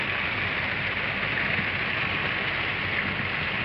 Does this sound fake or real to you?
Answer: real